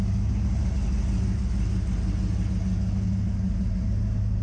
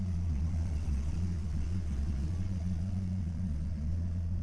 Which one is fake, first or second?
second